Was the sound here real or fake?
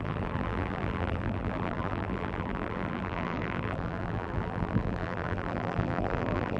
fake